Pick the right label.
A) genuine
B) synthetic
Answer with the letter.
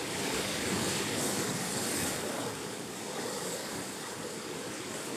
B